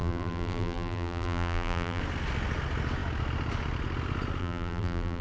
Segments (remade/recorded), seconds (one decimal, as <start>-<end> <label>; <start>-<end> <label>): 0.0-2.0 remade; 2.0-4.4 recorded; 4.4-5.2 remade